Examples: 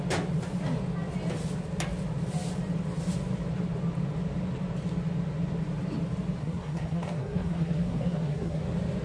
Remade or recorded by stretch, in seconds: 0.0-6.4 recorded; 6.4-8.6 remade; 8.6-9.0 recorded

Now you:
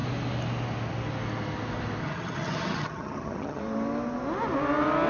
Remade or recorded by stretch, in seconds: 0.0-2.0 recorded; 2.0-3.6 remade; 3.6-5.1 recorded

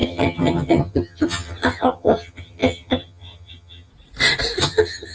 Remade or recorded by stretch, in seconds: 0.0-3.9 remade; 3.9-4.6 recorded; 4.6-5.1 remade

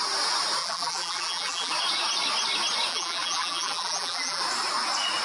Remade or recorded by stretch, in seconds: 0.0-0.6 recorded; 0.6-1.7 remade; 1.7-2.9 recorded; 2.9-4.4 remade; 4.4-5.2 recorded

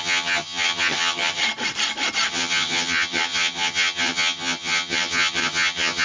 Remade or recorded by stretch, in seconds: 0.0-1.4 remade; 1.4-2.3 recorded; 2.3-6.0 remade